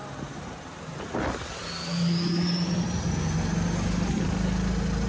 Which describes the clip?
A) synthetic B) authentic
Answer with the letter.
B